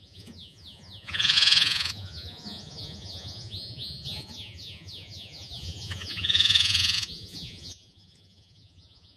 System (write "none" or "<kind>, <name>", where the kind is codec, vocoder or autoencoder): vocoder, Vocos